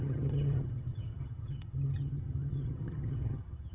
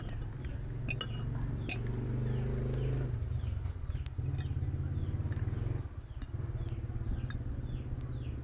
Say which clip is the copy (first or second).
first